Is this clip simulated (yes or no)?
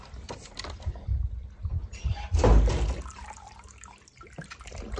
no